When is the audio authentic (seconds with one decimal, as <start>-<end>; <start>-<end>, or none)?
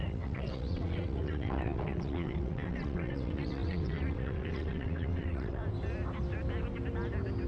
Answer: 5.6-7.5